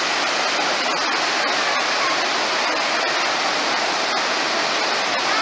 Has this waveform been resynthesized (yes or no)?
no